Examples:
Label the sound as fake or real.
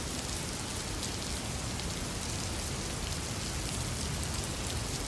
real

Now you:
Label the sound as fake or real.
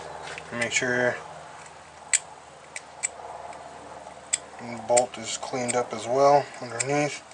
real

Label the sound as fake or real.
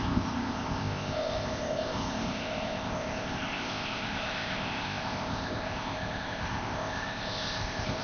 fake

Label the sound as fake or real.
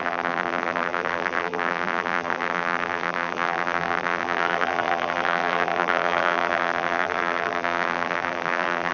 fake